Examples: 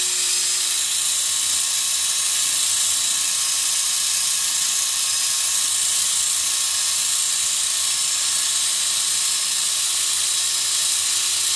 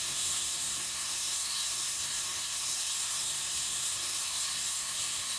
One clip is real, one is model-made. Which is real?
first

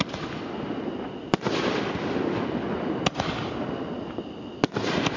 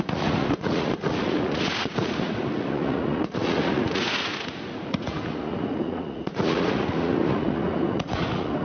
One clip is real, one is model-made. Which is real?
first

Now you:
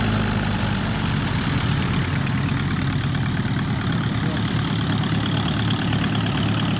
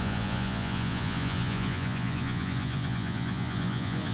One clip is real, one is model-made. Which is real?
first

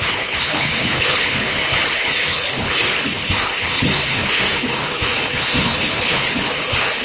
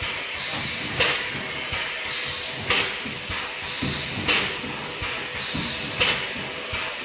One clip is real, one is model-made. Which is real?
second